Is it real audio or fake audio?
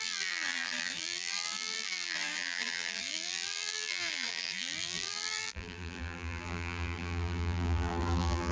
fake